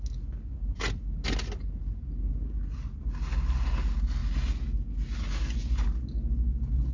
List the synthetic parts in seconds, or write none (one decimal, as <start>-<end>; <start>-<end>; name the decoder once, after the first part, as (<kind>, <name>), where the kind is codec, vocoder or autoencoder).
none